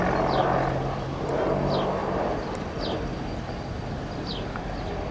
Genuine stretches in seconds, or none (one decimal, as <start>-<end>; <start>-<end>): 0.0-0.4; 1.3-2.0; 2.6-5.1

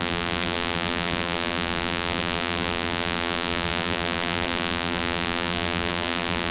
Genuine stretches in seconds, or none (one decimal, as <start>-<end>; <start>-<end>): none

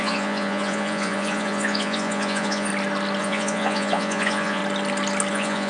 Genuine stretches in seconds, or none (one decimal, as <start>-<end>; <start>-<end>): 2.7-3.2; 4.6-5.3

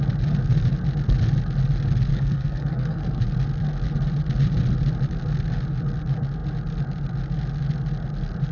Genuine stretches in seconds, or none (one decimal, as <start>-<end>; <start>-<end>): 0.0-2.1; 3.2-8.5

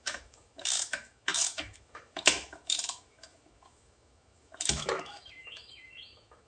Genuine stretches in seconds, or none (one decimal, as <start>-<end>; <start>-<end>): none

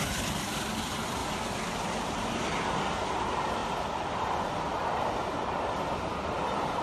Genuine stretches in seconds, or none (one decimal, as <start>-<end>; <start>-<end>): 0.0-1.2; 2.2-3.6; 4.7-6.8

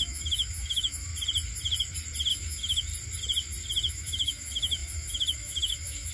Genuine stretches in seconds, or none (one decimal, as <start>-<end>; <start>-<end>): 1.1-2.3; 2.9-3.9

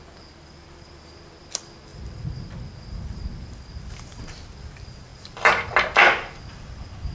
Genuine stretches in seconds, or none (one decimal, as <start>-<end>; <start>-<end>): 0.0-7.1